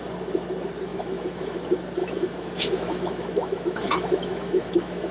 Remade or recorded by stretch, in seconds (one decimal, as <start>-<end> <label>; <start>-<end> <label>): 0.0-0.9 recorded; 0.9-1.6 remade; 1.6-2.0 recorded; 2.0-5.1 remade

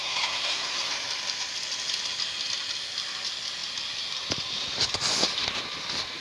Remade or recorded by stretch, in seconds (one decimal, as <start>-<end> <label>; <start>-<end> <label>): 0.0-0.9 remade; 0.9-6.2 recorded